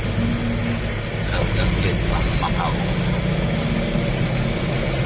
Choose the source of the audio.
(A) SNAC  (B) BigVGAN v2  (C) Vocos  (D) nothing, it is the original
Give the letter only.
D